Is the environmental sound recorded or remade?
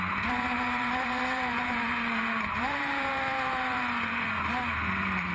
remade